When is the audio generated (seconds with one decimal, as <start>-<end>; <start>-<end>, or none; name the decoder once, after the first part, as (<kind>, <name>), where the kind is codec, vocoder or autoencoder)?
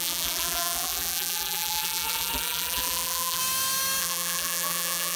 0.0-3.4 (vocoder, BigVGAN v2); 4.0-5.2